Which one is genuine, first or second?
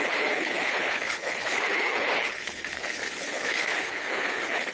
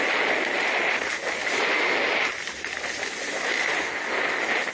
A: second